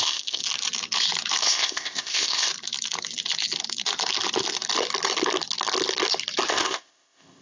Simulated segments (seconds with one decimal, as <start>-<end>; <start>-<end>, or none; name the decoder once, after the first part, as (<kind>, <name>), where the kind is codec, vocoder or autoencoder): 0.0-0.4 (codec, ZipCodec); 1.4-2.5; 6.5-7.4